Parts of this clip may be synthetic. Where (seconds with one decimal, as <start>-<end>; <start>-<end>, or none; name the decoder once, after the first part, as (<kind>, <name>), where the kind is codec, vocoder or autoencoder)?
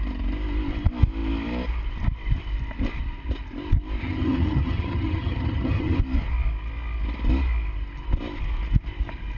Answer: 4.0-6.0 (vocoder, HiFi-GAN)